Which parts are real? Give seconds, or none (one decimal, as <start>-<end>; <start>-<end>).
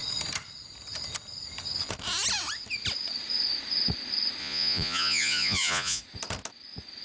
0.0-4.4; 6.0-7.0